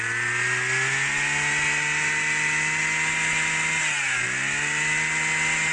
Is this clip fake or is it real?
real